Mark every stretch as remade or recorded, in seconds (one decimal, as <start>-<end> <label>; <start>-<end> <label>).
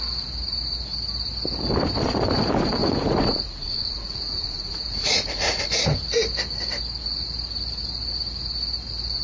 0.0-2.8 recorded; 2.8-5.7 remade; 5.7-9.2 recorded